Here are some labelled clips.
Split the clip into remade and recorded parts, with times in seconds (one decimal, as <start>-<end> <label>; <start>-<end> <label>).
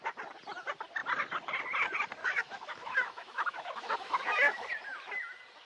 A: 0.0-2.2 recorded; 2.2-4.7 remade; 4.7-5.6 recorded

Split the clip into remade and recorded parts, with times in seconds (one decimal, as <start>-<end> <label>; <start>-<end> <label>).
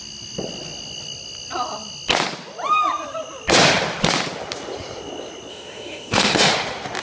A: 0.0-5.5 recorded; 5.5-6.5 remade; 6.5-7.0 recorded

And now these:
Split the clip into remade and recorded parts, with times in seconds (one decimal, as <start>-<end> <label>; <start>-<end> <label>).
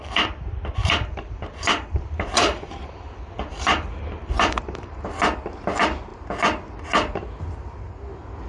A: 0.0-0.8 recorded; 0.8-5.2 remade; 5.2-8.5 recorded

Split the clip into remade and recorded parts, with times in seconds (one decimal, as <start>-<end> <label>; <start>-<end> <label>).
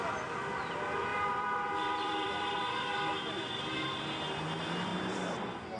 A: 0.0-1.1 recorded; 1.1-2.6 remade; 2.6-4.9 recorded; 4.9-5.8 remade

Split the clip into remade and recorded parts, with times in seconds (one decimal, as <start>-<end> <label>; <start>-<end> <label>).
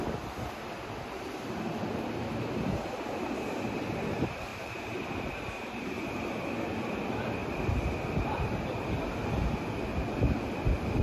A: 0.0-4.5 recorded; 4.5-6.2 remade; 6.2-11.0 recorded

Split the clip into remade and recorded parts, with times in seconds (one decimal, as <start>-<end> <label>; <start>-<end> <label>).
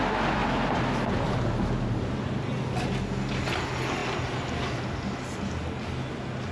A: 0.0-6.5 recorded